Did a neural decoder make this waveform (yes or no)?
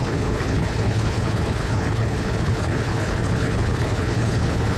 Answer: yes